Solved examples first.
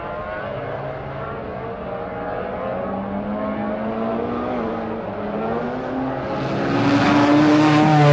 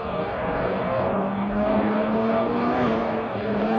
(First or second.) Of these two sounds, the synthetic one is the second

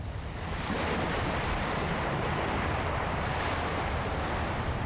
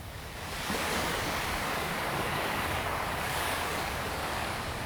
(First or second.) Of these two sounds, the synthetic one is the second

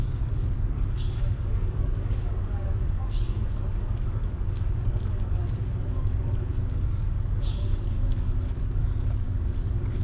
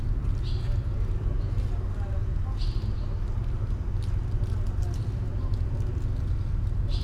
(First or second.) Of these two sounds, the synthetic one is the first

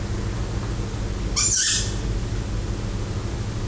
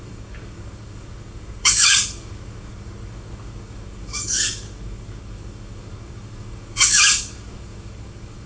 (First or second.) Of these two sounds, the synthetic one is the second